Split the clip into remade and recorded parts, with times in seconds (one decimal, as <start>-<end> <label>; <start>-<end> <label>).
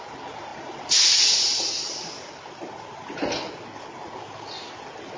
0.0-5.2 recorded